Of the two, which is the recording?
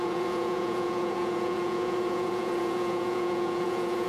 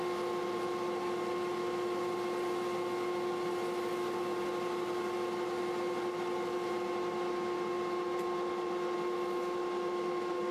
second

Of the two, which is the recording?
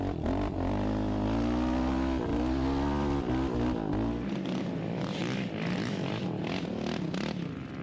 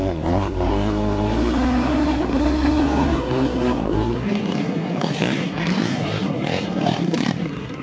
first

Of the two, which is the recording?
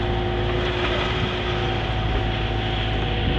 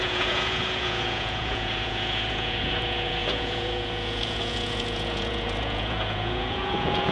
first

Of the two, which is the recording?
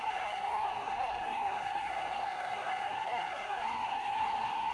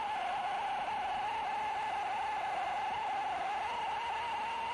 second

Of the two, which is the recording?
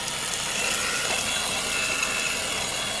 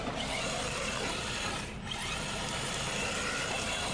first